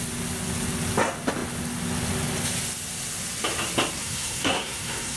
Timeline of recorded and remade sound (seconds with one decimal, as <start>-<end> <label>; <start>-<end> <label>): 0.0-4.0 recorded; 4.0-5.2 remade